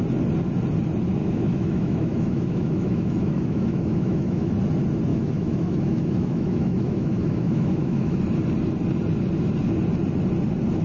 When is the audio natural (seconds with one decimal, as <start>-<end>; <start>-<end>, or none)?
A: 0.0-1.2; 4.5-5.1; 8.2-10.8